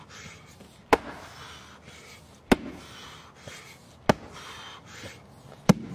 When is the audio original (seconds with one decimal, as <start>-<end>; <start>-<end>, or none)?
0.0-5.9

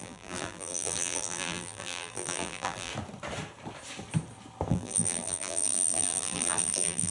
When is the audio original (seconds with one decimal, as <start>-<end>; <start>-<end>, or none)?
2.9-4.7

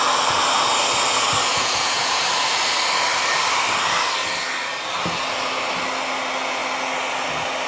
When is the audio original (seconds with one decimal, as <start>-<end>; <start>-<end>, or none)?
0.0-1.5; 2.2-7.7

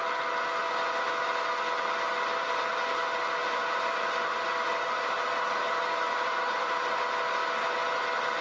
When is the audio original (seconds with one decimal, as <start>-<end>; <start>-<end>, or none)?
0.0-3.4; 7.0-8.4

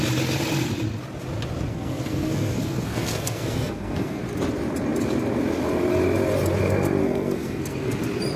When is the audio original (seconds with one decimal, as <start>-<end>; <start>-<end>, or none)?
0.0-1.7; 4.2-7.0; 8.0-8.4